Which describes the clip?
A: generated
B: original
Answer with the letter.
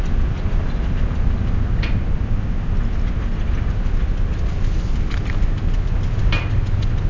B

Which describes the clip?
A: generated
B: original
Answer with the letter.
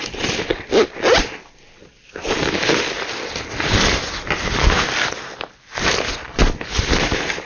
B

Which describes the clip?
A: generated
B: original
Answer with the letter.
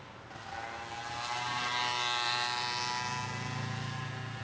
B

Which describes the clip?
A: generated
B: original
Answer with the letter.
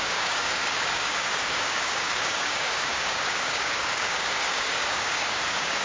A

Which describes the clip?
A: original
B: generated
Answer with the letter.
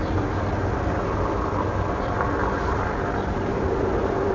A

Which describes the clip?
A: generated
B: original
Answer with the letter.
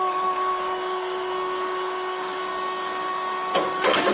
A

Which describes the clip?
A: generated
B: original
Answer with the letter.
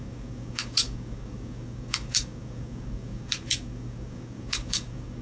A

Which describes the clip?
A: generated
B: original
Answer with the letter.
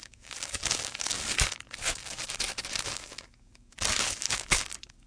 A